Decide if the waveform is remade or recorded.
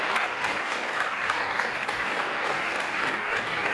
remade